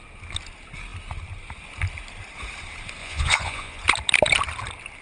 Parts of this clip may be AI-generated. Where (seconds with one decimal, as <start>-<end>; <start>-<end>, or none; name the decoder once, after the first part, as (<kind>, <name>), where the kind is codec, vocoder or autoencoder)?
3.0-3.8 (vocoder, Vocos)